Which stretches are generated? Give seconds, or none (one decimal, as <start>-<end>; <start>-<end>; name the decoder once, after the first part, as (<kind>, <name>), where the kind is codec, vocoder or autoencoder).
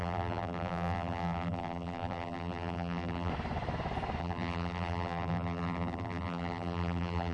0.0-3.3 (vocoder, BigVGAN v2); 4.2-7.3